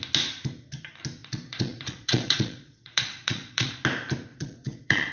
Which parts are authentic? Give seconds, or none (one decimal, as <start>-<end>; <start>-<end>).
0.0-1.2; 3.7-4.3